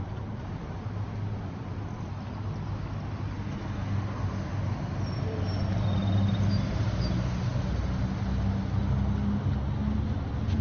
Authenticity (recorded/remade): recorded